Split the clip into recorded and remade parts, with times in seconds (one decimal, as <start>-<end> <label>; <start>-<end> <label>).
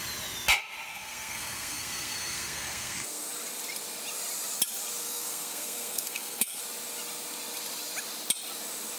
0.0-0.9 recorded; 0.9-3.3 remade; 3.3-5.0 recorded; 5.0-6.6 remade; 6.6-9.0 recorded